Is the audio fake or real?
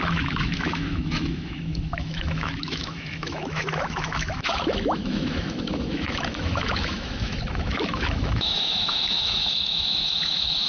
fake